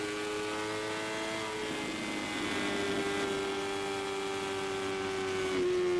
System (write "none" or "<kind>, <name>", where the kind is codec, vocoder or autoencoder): none